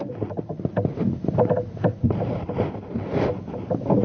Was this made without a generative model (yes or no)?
yes